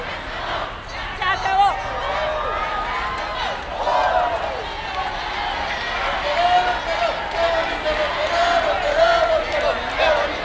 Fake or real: real